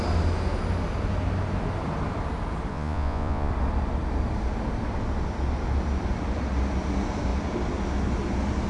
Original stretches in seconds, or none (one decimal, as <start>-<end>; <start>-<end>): 0.0-2.7; 3.5-8.7

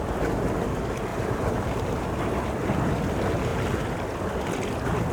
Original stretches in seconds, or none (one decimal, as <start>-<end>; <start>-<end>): 0.0-1.1; 2.0-5.1